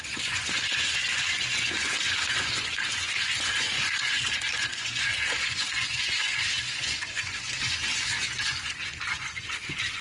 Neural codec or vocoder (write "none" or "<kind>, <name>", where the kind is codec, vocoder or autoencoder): vocoder, Vocos